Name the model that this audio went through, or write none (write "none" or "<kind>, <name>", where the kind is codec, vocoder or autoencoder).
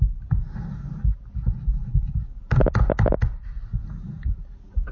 none